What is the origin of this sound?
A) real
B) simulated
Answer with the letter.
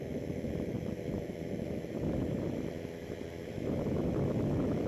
B